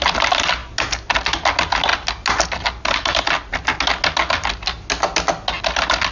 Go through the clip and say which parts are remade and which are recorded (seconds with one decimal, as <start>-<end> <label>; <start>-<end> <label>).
0.0-6.1 recorded